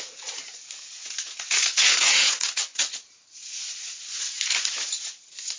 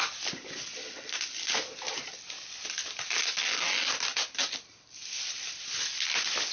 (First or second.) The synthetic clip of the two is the first